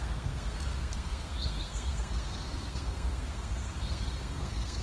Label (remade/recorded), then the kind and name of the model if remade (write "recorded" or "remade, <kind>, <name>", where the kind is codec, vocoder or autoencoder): remade, codec, SNAC